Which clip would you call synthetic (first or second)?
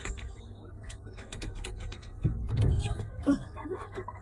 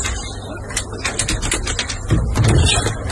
first